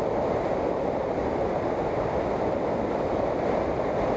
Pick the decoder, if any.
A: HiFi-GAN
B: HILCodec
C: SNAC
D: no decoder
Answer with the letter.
D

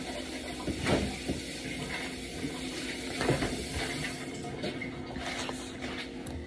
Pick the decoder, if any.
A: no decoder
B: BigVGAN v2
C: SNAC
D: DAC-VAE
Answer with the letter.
A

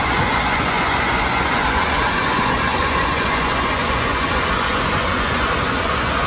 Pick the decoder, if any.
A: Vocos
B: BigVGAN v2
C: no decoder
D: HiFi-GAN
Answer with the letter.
A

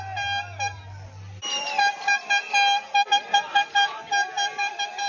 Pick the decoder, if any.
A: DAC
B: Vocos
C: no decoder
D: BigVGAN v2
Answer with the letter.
C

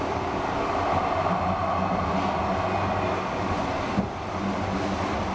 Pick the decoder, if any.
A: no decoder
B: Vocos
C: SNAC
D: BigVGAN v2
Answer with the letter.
A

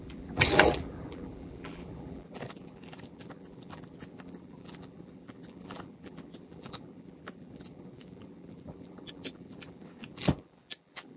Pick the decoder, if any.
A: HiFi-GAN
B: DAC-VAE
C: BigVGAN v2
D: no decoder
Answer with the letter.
C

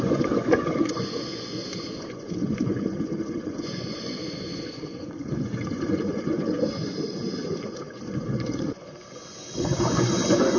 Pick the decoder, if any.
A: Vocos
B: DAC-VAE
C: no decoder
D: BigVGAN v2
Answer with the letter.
A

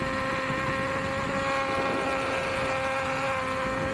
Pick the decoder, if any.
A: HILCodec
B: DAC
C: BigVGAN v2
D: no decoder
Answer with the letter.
D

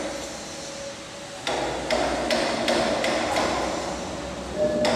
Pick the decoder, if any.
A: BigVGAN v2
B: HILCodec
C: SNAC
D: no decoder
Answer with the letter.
D